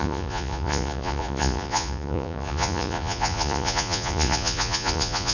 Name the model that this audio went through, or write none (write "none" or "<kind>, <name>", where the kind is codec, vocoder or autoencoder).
vocoder, Vocos